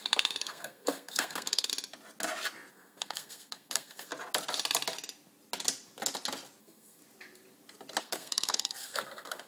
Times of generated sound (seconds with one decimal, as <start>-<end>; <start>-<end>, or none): 0.0-1.7; 2.7-4.1; 6.6-7.0; 8.0-9.5